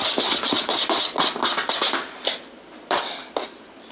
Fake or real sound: real